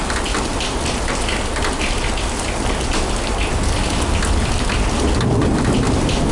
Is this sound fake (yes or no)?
no